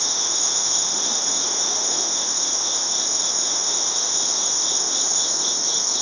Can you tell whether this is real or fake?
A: fake